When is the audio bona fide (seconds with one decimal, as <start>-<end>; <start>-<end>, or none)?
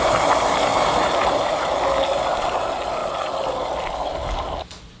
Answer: 0.0-0.7; 1.7-5.0